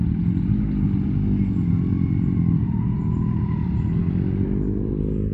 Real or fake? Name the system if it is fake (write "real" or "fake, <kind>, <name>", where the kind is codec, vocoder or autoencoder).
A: real